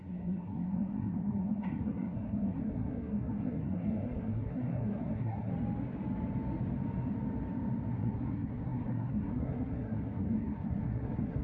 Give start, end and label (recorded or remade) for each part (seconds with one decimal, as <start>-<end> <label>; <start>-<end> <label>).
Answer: 0.0-5.5 remade; 5.5-7.9 recorded; 7.9-11.4 remade